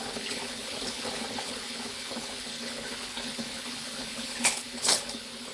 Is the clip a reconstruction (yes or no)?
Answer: yes